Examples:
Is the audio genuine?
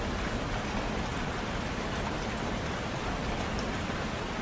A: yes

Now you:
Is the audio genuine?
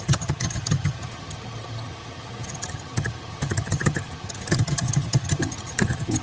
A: no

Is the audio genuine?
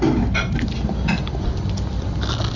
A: yes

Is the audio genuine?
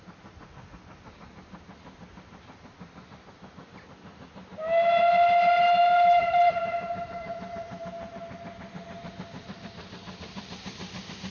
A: yes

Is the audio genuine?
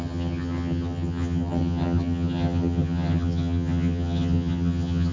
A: no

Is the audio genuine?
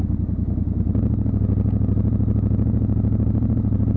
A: yes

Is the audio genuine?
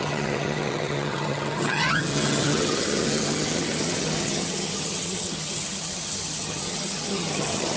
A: no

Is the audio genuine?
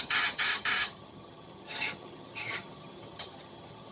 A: no